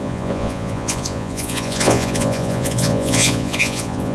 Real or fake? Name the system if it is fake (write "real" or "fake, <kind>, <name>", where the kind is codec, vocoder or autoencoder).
fake, vocoder, Vocos